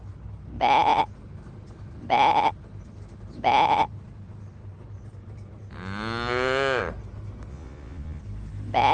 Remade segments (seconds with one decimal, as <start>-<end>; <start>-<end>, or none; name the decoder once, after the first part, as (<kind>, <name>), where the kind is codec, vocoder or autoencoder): 7.5-8.2 (vocoder, Vocos)